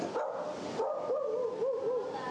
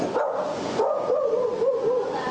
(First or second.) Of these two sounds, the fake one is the second